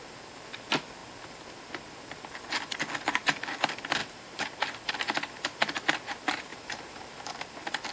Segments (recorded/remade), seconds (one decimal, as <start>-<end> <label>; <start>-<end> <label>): 0.0-4.0 recorded; 4.0-4.9 remade; 4.9-6.5 recorded; 6.5-7.3 remade; 7.3-7.9 recorded